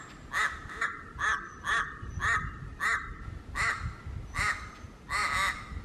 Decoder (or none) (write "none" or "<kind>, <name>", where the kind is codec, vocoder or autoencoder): none